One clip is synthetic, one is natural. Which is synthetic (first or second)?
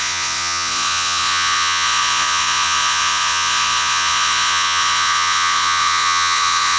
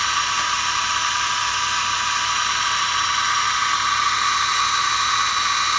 first